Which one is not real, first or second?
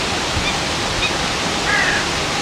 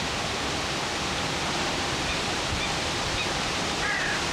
second